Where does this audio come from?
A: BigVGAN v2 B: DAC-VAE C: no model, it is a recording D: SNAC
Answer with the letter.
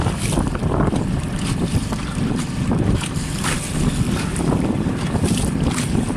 A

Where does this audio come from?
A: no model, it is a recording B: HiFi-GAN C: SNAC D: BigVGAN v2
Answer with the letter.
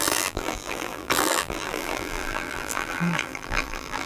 D